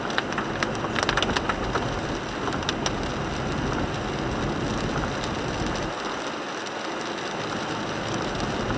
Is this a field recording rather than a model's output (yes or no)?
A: yes